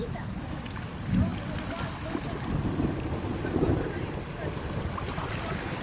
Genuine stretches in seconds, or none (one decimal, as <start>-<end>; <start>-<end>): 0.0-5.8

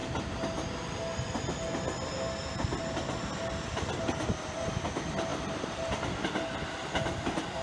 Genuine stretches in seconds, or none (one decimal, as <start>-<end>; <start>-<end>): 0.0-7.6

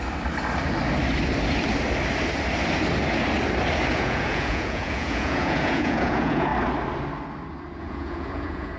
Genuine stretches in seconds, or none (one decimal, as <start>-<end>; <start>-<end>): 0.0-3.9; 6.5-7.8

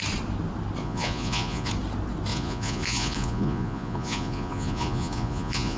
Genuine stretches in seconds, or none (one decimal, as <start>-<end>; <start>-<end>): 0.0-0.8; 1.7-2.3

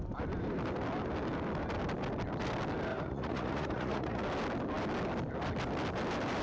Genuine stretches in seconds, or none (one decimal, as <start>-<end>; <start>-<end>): 0.0-2.9; 4.2-6.4

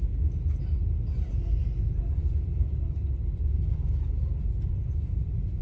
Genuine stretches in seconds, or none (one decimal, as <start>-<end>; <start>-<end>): 0.0-5.6

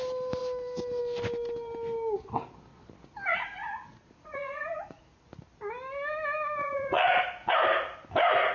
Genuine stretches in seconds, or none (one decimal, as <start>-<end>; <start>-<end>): 0.0-3.3; 5.0-6.6; 7.2-8.5